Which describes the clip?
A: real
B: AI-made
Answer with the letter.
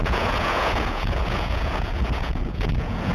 B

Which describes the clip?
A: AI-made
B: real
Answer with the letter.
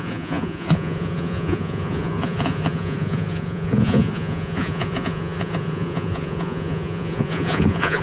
A